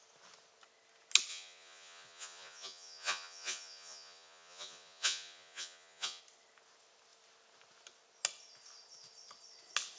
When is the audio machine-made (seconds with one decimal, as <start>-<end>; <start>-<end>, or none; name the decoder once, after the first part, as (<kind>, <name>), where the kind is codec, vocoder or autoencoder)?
1.3-6.2 (vocoder, Vocos)